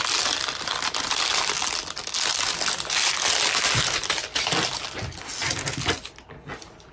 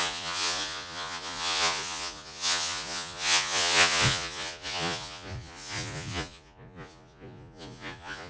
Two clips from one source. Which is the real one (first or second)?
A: first